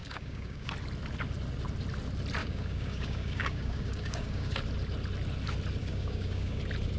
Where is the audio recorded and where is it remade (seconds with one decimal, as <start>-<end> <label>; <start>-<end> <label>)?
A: 0.0-0.7 remade; 0.7-2.4 recorded; 2.4-4.6 remade; 4.6-5.8 recorded; 5.8-6.6 remade; 6.6-7.0 recorded